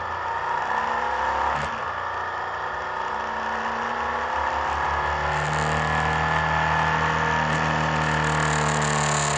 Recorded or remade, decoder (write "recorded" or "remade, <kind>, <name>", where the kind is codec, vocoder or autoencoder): recorded